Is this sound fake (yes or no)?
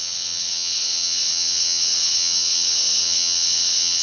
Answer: yes